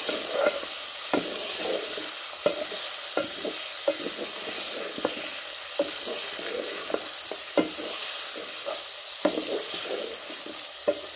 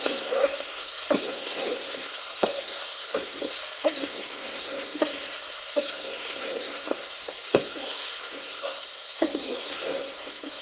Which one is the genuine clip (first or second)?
first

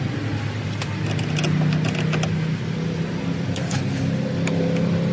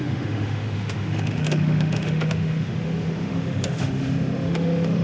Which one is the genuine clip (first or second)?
first